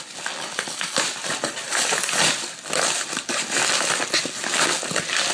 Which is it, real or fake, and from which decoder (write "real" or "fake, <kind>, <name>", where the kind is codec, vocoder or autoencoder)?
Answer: real